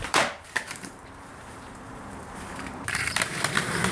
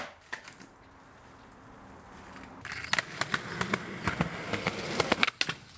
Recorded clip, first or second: second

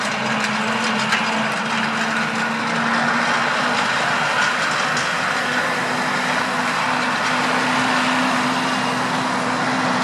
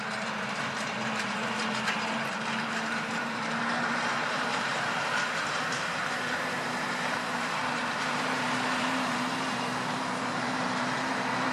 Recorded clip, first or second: first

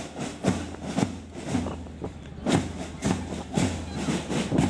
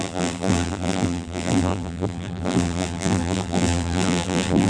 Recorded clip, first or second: first